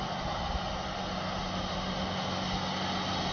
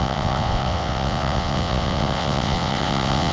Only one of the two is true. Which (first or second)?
first